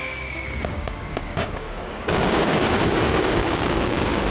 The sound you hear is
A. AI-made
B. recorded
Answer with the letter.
A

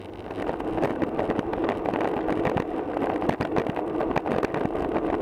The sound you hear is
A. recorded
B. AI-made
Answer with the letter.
A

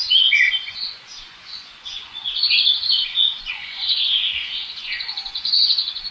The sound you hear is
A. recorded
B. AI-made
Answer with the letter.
B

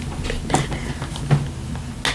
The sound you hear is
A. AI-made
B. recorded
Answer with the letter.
B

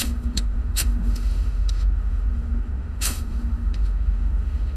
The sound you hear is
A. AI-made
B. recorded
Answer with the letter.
A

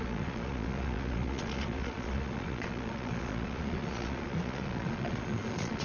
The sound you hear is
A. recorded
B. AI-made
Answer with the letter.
B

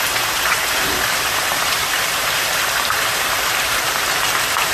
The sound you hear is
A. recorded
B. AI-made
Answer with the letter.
B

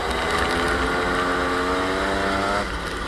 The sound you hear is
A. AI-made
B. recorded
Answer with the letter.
B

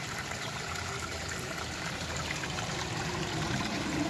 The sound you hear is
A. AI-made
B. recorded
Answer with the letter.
A